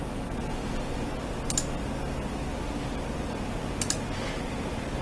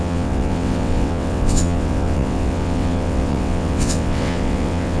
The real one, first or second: first